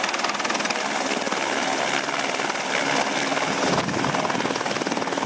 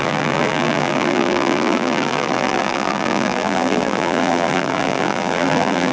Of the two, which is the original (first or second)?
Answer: first